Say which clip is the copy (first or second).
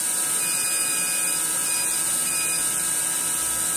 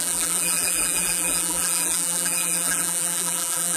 second